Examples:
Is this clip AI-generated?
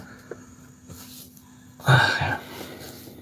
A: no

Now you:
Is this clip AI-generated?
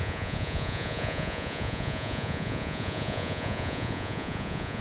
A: yes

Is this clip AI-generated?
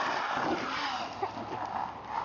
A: no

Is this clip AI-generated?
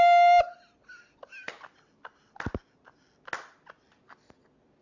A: no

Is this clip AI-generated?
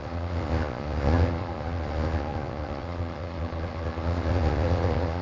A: yes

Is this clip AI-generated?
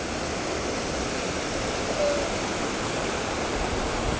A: no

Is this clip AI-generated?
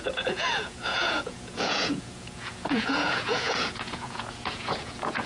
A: yes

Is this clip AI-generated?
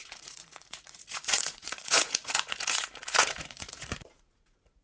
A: yes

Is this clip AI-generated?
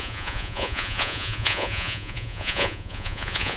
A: yes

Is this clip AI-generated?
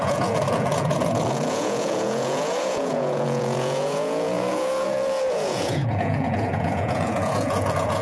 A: yes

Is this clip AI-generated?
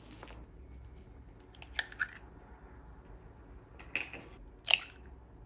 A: no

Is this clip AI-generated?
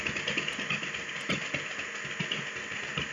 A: no